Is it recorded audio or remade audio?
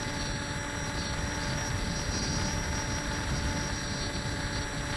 recorded